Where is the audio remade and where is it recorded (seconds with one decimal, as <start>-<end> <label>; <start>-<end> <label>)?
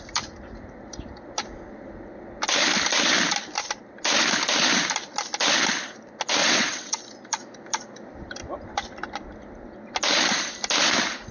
0.0-6.4 recorded; 6.4-7.0 remade; 7.0-11.3 recorded